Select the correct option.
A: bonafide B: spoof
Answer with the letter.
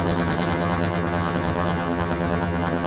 B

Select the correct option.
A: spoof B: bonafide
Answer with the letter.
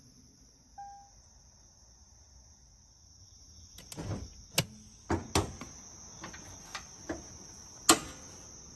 B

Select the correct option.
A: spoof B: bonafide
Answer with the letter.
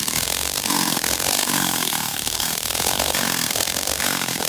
A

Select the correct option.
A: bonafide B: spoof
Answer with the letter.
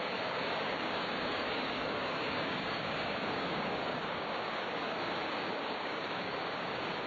B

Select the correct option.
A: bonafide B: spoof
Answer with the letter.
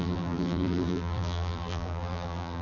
B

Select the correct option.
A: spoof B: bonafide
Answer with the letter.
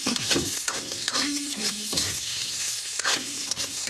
A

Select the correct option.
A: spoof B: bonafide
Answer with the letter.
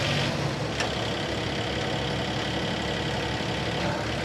B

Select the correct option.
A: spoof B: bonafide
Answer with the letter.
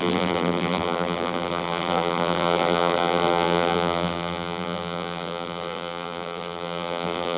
A